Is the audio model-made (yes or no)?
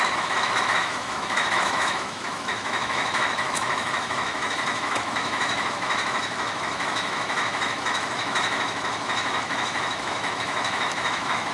yes